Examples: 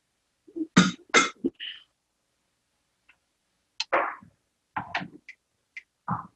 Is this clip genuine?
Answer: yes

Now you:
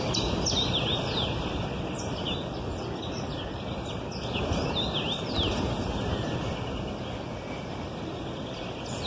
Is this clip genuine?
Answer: yes